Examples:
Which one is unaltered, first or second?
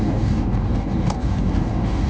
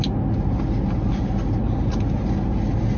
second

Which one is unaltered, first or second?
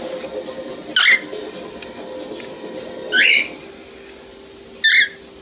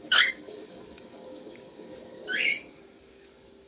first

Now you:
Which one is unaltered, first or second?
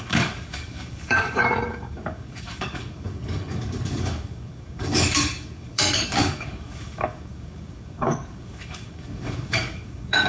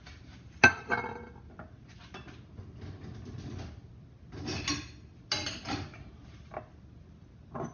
second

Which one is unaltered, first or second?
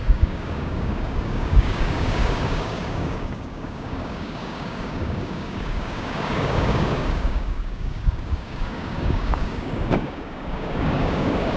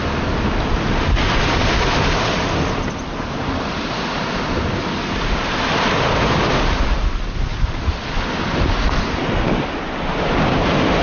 second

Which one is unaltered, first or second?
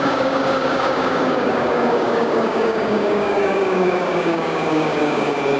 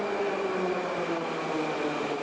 second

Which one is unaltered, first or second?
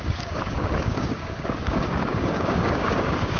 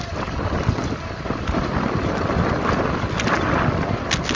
second